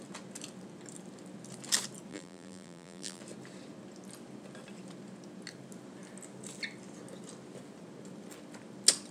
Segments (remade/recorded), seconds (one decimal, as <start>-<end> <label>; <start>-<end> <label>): 0.0-2.1 recorded; 2.1-3.2 remade; 3.2-9.1 recorded